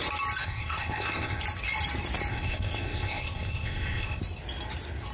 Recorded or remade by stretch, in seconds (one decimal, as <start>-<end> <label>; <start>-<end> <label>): 0.0-0.4 recorded; 0.4-1.4 remade; 1.4-2.3 recorded; 2.3-4.2 remade; 4.2-5.1 recorded